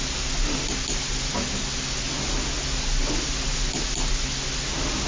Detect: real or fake real